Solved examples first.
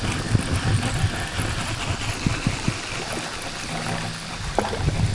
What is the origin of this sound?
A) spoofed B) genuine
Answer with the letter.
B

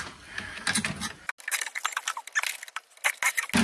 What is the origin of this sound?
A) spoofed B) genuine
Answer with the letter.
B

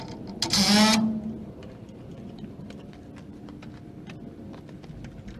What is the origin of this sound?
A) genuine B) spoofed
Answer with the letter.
A